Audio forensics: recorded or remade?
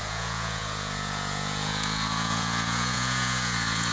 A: remade